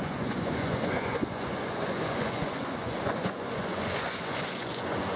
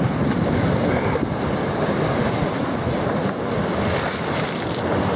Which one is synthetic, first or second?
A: first